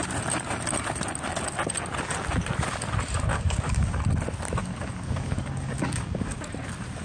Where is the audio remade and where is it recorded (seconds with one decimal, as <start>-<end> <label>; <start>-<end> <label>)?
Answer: 0.0-3.3 recorded; 3.3-4.0 remade; 4.0-4.6 recorded; 4.6-6.4 remade; 6.4-7.0 recorded